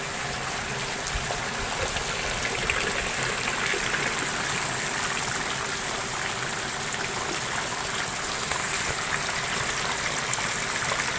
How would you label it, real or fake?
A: real